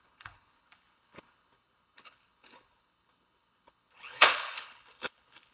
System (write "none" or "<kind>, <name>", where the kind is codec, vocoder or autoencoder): codec, HILCodec